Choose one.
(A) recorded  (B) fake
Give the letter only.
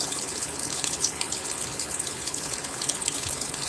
B